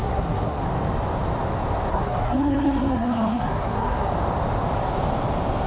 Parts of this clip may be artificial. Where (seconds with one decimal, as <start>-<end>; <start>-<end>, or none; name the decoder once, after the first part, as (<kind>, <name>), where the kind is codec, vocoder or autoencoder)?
0.0-0.6 (codec, SNAC); 1.9-4.1